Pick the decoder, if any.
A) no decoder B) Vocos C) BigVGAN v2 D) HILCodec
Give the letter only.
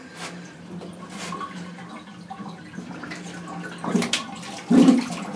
A